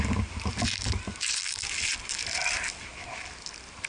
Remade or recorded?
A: recorded